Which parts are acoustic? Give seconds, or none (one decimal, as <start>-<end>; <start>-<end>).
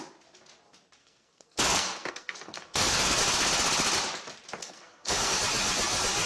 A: 0.0-1.0; 3.2-4.6; 5.4-6.3